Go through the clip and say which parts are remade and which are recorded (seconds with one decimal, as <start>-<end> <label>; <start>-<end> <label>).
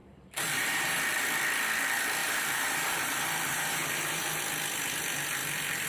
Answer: 0.0-1.0 remade; 1.0-2.2 recorded; 2.2-4.4 remade; 4.4-5.9 recorded